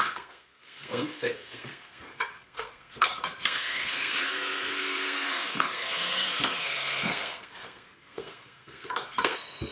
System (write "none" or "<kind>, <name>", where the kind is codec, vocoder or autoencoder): codec, SNAC